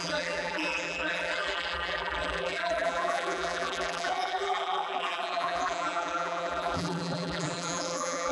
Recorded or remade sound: remade